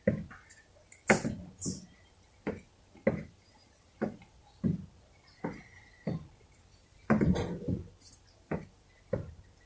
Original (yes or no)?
yes